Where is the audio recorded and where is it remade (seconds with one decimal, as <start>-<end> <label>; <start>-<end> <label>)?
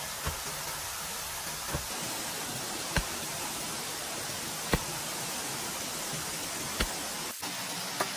0.0-2.5 recorded; 2.5-5.1 remade; 5.1-8.2 recorded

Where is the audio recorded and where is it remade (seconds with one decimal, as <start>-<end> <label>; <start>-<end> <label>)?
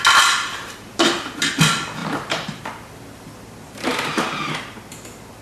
0.0-2.0 recorded; 2.0-2.6 remade; 2.6-5.4 recorded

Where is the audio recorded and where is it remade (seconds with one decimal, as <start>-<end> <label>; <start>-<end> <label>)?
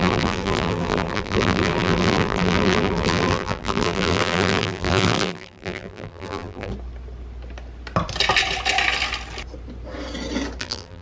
0.0-6.7 remade; 6.7-10.6 recorded; 10.6-11.0 remade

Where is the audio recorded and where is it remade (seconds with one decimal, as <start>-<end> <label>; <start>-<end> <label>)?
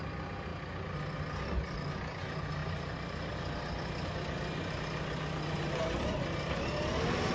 0.0-2.6 recorded; 2.6-3.5 remade; 3.5-7.3 recorded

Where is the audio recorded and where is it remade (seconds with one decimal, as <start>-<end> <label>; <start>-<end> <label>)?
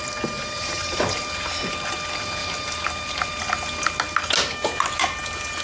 0.0-0.4 recorded; 0.4-1.2 remade; 1.2-2.4 recorded; 2.4-3.4 remade; 3.4-5.6 recorded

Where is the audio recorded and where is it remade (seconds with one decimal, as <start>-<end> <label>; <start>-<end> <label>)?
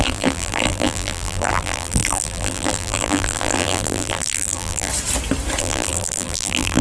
0.0-4.9 remade; 4.9-5.6 recorded; 5.6-6.8 remade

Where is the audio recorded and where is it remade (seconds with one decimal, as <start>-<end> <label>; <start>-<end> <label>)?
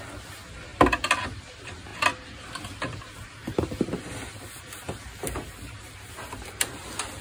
0.0-3.4 recorded; 3.4-7.2 remade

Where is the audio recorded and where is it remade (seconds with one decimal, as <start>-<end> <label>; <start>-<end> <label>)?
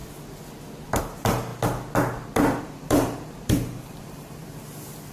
0.0-1.0 recorded; 1.0-1.5 remade; 1.5-2.6 recorded; 2.6-4.4 remade; 4.4-5.1 recorded